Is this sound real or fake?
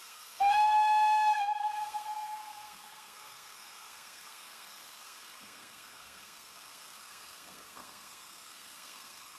fake